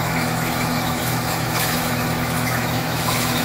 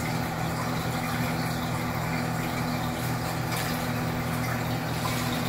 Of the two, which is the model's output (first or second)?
first